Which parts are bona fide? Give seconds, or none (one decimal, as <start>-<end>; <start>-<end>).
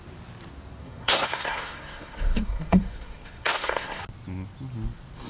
0.0-0.8; 4.0-5.3